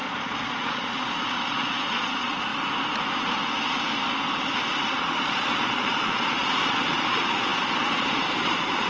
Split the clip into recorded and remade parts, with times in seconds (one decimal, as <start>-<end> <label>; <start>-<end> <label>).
0.0-2.5 remade; 2.5-4.9 recorded; 4.9-8.9 remade